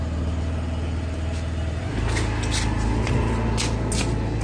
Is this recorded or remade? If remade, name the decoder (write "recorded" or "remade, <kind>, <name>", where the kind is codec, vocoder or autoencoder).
recorded